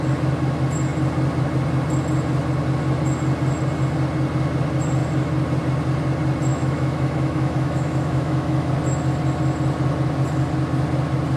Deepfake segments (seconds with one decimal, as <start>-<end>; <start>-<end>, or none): 6.5-8.7